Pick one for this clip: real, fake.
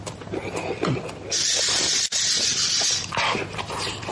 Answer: real